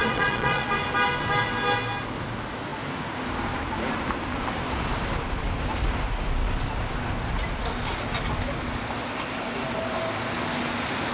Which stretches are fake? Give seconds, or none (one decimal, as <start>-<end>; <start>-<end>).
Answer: 0.0-0.7